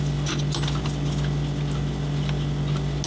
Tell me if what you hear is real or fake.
real